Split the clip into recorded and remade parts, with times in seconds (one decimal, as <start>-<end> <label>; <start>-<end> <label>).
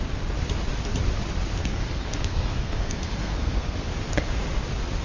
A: 0.0-1.6 recorded; 1.6-3.9 remade; 3.9-5.0 recorded